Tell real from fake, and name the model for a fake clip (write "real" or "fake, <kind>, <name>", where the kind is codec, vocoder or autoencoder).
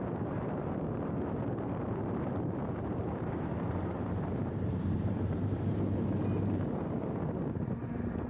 fake, vocoder, BigVGAN v2